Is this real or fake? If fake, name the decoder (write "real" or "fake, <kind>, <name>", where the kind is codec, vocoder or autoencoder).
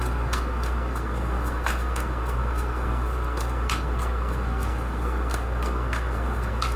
fake, codec, SNAC